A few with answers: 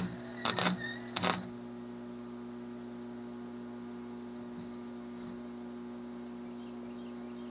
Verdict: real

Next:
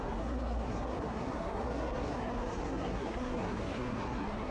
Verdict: fake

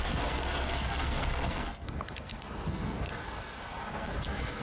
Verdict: fake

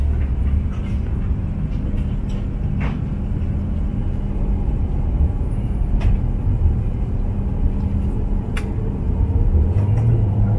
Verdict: real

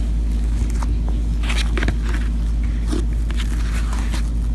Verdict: real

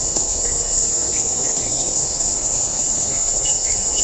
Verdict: fake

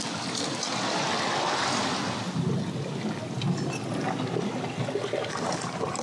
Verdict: real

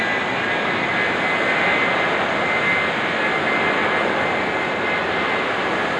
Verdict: real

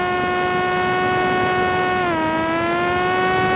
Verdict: real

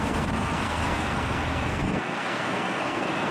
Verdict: fake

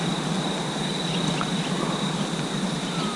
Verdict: real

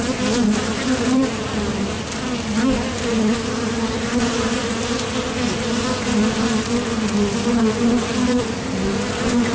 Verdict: real